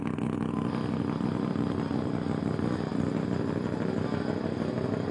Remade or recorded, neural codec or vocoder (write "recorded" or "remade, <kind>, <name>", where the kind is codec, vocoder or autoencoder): recorded